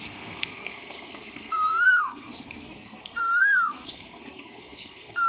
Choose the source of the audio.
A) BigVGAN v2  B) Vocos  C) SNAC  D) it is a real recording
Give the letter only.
C